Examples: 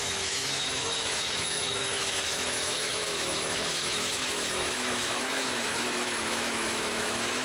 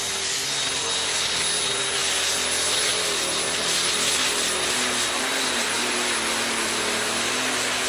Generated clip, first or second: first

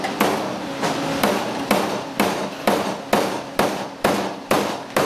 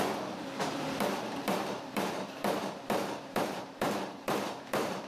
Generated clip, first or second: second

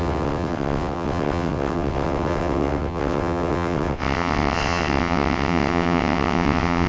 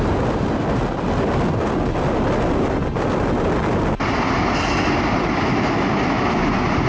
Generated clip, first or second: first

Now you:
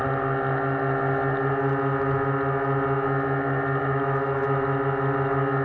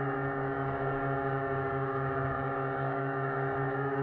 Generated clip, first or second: second